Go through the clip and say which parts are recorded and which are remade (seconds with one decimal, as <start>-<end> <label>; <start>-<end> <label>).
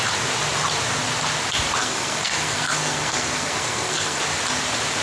0.0-1.8 recorded; 1.8-4.2 remade; 4.2-5.0 recorded